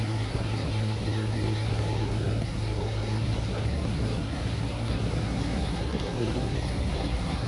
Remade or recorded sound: remade